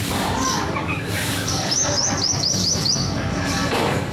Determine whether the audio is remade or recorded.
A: remade